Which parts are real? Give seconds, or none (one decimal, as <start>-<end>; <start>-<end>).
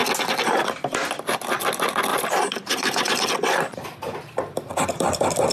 0.0-2.1; 3.3-5.5